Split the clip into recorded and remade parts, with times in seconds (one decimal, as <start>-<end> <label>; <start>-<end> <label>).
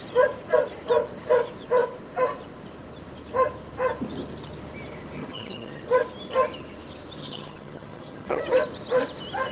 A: 0.0-5.2 recorded; 5.2-5.8 remade; 5.8-7.2 recorded; 7.2-8.4 remade; 8.4-9.5 recorded